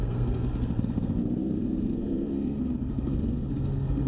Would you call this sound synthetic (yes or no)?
yes